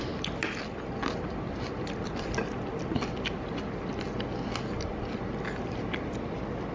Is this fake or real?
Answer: real